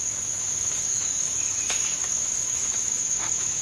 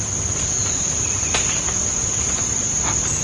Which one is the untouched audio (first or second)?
second